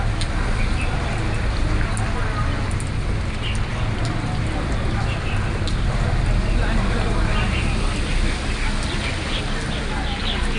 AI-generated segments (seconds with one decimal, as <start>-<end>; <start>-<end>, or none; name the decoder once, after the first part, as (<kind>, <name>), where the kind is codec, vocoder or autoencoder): none